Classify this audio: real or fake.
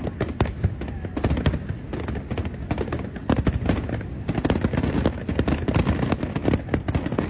real